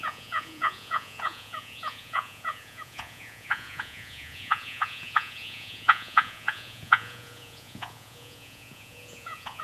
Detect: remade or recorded remade